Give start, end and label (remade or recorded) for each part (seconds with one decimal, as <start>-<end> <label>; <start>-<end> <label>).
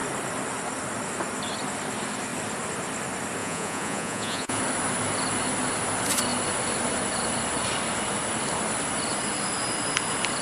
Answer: 0.0-3.4 recorded; 3.4-4.6 remade; 4.6-10.4 recorded